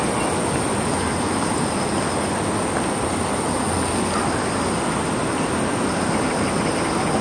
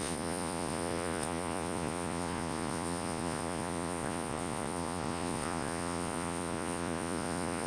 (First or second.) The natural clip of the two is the first